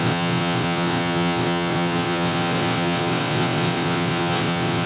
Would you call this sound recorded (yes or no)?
no